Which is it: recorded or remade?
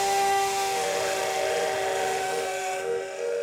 remade